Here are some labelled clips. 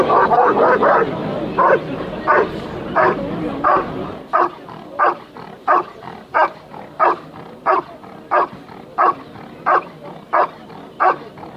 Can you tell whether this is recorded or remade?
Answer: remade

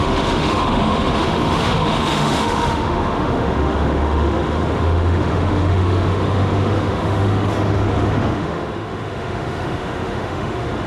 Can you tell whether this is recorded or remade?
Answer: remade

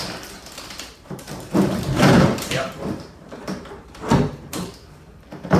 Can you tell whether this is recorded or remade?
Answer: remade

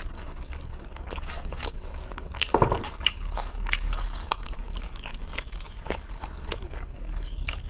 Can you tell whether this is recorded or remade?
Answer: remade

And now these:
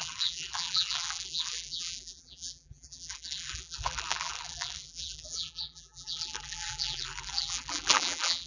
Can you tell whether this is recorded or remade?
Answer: remade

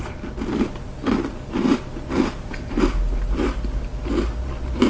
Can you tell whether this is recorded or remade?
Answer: recorded